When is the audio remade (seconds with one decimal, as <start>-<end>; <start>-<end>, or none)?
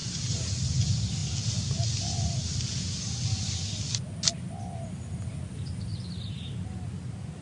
0.0-0.5; 5.9-6.5